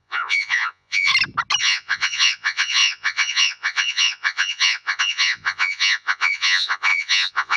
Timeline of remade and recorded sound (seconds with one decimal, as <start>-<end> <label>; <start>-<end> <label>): 0.0-1.1 remade; 1.1-1.6 recorded; 1.6-7.6 remade

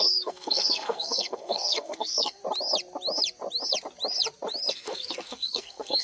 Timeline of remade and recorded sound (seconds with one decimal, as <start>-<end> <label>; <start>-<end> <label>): 0.0-2.4 remade; 2.4-4.7 recorded; 4.7-6.0 remade